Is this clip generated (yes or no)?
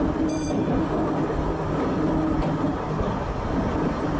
no